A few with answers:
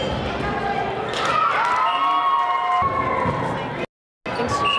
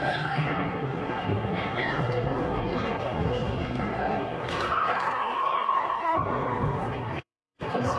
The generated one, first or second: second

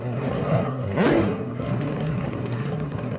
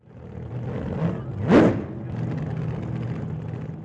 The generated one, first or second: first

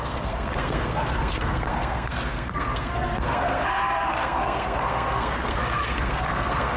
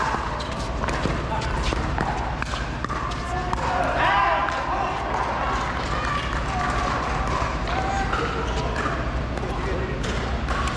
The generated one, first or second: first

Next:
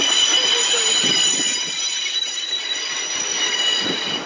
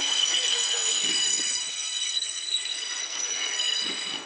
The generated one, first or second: second